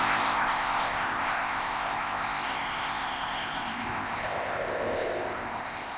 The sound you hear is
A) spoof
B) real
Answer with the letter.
A